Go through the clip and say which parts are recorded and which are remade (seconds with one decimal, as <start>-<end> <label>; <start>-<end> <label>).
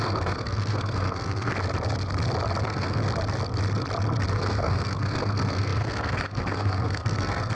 0.0-1.5 remade; 1.5-2.6 recorded; 2.6-3.0 remade; 3.0-4.3 recorded; 4.3-7.5 remade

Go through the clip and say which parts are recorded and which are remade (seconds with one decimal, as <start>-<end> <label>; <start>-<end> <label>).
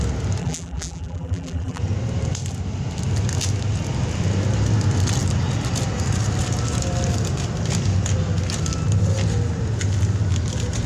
0.0-0.4 recorded; 0.4-1.8 remade; 1.8-10.9 recorded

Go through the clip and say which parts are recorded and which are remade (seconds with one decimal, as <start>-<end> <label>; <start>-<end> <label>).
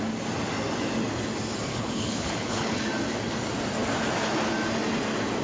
0.0-1.7 recorded; 1.7-2.8 remade; 2.8-5.4 recorded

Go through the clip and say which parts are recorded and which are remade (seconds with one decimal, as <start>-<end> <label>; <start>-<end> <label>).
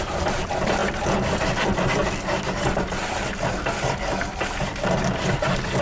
0.0-5.8 recorded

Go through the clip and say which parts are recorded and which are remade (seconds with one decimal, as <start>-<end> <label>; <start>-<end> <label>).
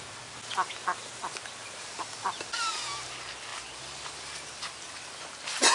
0.0-5.7 recorded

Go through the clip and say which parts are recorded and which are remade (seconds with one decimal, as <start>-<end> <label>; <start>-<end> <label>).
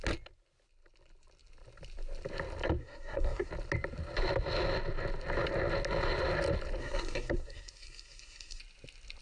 0.0-2.8 recorded; 2.8-3.5 remade; 3.5-6.8 recorded; 6.8-8.6 remade; 8.6-9.2 recorded